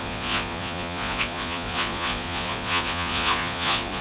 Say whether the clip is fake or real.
fake